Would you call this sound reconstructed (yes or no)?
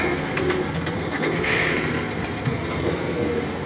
yes